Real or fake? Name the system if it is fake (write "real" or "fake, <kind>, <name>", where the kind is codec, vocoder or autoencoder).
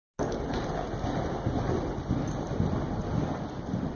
real